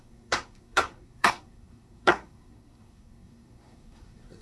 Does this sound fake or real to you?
fake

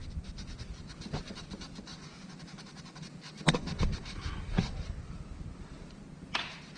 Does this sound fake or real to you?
real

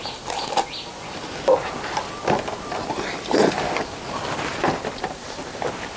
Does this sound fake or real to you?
real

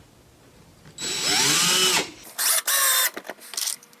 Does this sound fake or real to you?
real